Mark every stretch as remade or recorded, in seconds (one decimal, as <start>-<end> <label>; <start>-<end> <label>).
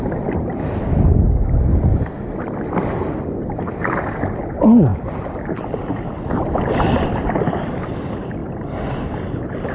0.0-8.4 recorded; 8.4-9.0 remade; 9.0-9.7 recorded